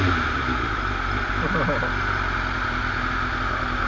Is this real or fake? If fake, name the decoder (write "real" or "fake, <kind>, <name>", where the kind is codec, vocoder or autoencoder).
real